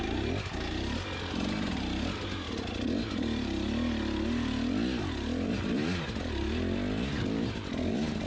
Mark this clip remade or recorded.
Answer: recorded